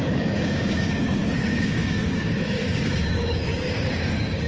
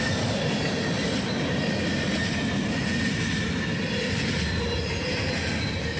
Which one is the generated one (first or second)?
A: first